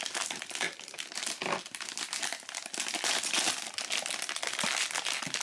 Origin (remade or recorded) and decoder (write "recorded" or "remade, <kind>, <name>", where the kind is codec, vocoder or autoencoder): recorded